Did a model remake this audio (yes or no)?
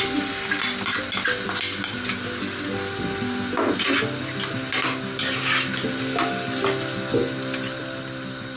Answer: no